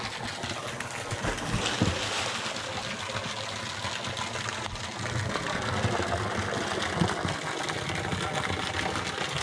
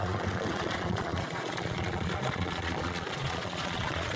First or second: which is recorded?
first